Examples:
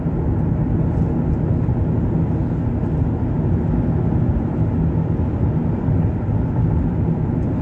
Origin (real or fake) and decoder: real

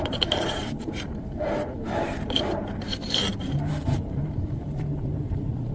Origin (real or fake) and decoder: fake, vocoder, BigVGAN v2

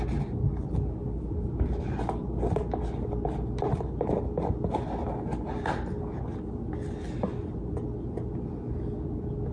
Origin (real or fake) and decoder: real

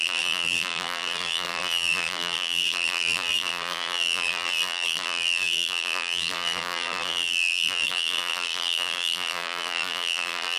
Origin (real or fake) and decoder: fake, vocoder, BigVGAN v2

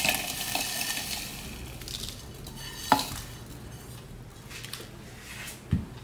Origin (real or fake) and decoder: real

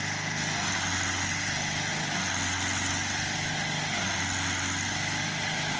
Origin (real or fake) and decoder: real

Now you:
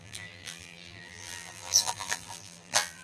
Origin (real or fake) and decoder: fake, vocoder, BigVGAN v2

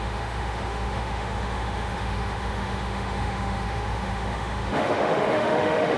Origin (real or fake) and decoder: fake, autoencoder, DAC-VAE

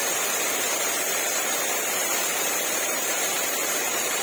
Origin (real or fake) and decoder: fake, vocoder, BigVGAN v2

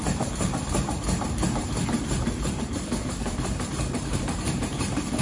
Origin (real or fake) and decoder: fake, vocoder, BigVGAN v2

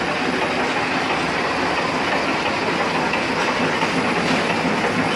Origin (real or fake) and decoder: real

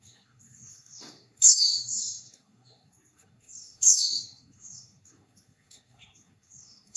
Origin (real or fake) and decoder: fake, codec, SNAC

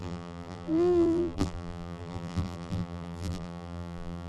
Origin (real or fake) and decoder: fake, vocoder, BigVGAN v2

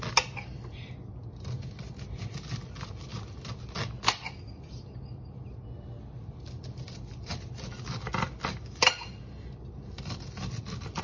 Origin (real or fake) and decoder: real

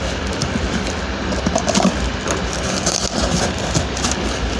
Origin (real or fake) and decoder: real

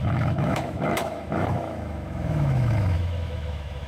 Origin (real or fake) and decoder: fake, autoencoder, DAC-VAE